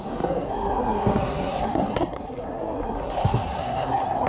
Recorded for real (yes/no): no